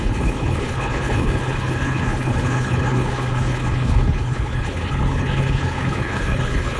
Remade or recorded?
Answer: remade